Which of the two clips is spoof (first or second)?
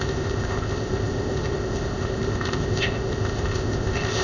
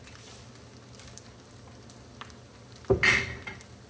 first